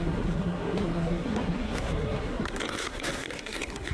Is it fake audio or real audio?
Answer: fake